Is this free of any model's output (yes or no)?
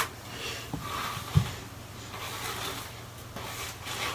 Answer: yes